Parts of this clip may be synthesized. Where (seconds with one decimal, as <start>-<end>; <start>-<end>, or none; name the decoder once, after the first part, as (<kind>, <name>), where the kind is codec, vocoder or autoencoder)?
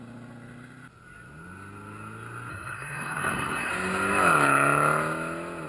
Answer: 2.5-3.7 (codec, SNAC)